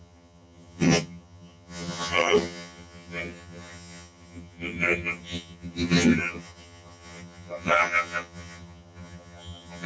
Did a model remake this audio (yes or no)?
yes